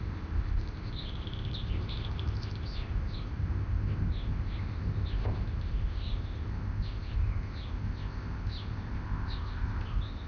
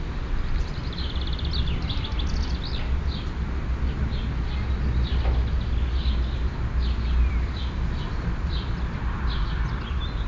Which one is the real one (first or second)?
second